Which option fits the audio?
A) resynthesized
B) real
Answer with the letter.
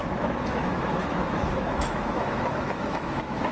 A